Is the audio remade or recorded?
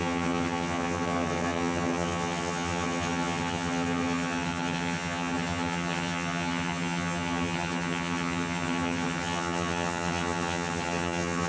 remade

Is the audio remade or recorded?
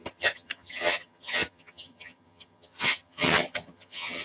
remade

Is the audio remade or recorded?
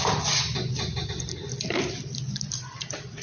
recorded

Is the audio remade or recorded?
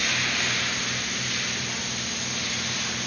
recorded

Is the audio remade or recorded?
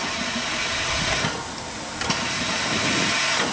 recorded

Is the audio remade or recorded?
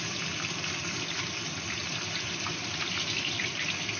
recorded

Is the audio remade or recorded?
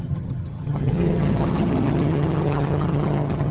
remade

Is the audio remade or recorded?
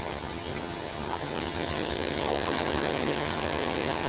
remade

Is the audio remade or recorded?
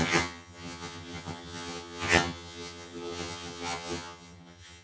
remade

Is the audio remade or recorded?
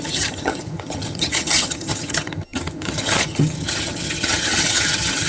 remade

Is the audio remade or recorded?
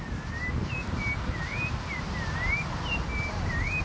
recorded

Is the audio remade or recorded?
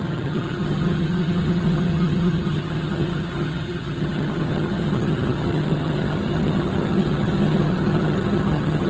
remade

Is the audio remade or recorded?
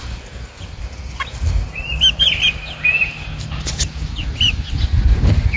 recorded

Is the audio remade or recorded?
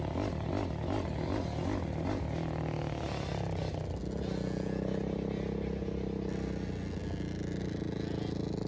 recorded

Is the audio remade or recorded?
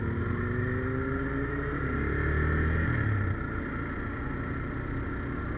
recorded